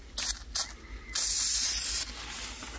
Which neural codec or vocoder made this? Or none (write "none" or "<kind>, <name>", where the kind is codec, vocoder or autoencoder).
none